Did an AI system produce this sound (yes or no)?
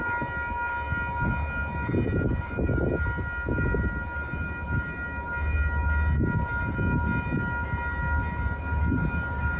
no